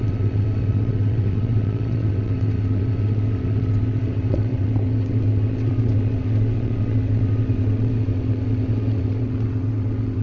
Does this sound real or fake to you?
fake